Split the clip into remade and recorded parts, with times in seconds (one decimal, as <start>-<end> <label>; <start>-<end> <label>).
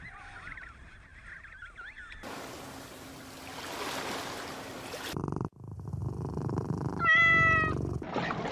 0.0-8.5 recorded